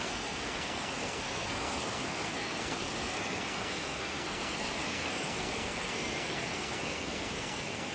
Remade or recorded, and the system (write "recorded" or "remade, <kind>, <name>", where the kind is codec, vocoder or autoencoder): remade, codec, SNAC